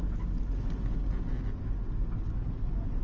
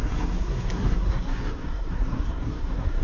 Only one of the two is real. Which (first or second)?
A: first